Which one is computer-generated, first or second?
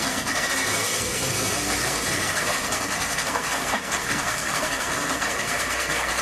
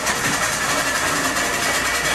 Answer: first